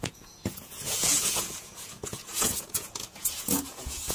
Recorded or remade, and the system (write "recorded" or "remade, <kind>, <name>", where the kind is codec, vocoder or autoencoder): remade, vocoder, Vocos